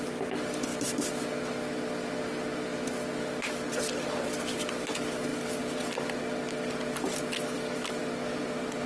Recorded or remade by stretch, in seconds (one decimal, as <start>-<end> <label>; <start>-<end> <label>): 0.0-8.9 recorded